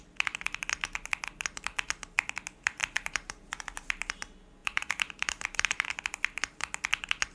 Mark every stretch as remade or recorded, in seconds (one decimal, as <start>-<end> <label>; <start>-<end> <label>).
0.0-2.8 recorded; 2.8-3.9 remade; 3.9-4.6 recorded; 4.6-5.9 remade; 5.9-7.3 recorded